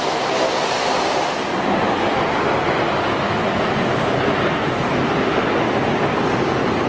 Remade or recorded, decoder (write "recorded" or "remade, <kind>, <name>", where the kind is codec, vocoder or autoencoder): recorded